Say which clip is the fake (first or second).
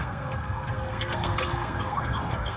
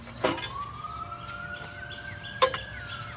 first